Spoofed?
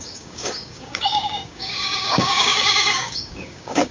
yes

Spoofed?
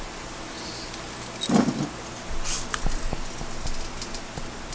no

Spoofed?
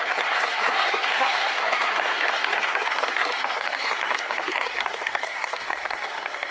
yes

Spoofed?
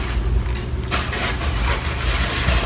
no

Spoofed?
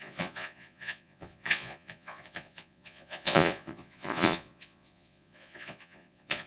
yes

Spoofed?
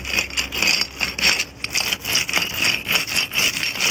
no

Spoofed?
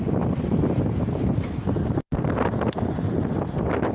no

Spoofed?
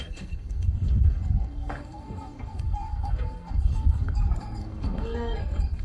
yes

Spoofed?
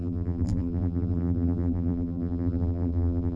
yes